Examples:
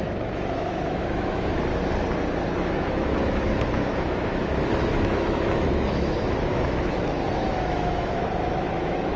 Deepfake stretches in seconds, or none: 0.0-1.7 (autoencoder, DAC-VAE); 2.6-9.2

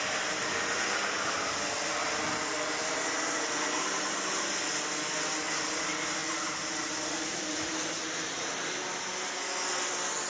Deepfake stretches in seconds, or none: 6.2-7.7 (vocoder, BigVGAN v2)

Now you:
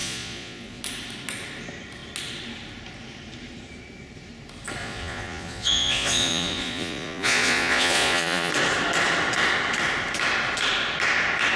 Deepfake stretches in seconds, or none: 0.0-0.8 (vocoder, Vocos); 4.8-8.5

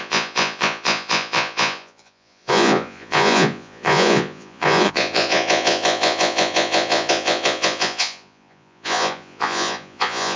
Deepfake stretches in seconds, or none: 0.0-10.4 (vocoder, Vocos)

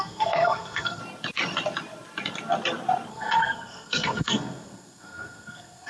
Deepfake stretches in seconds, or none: 0.0-1.0 (codec, SNAC); 3.1-5.9